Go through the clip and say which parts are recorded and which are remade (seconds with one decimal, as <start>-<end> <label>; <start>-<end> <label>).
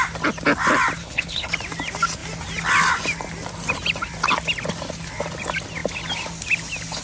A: 0.0-1.0 recorded; 1.0-1.5 remade; 1.5-7.0 recorded